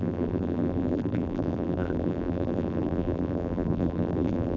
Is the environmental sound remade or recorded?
remade